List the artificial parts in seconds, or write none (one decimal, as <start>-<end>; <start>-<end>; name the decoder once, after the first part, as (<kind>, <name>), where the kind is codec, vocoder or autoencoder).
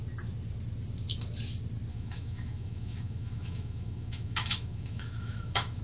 1.9-5.8 (autoencoder, DAC-VAE)